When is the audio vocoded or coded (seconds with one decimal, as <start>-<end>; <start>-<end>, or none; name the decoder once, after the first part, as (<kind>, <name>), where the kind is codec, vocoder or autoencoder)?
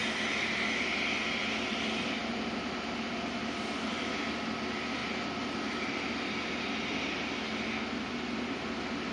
2.2-4.0 (vocoder, BigVGAN v2); 5.0-6.1